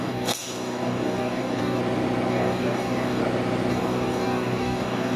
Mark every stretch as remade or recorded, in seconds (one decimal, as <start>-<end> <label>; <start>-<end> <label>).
0.0-1.8 remade; 1.8-2.3 recorded; 2.3-3.2 remade; 3.2-3.7 recorded; 3.7-5.2 remade